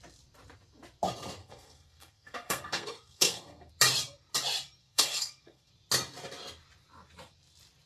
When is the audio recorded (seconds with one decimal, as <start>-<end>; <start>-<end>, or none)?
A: 0.0-1.4; 3.7-4.8; 5.7-7.9